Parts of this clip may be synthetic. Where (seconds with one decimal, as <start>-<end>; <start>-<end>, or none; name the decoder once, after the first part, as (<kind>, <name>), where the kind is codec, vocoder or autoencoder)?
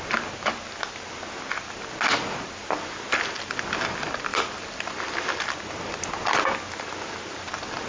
4.3-5.0 (vocoder, BigVGAN v2)